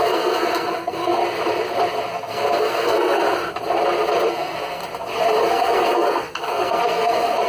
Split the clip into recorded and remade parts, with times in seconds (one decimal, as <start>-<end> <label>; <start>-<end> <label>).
0.0-1.2 remade; 1.2-2.1 recorded; 2.1-3.2 remade; 3.2-4.3 recorded; 4.3-4.8 remade; 4.8-5.5 recorded; 5.5-7.5 remade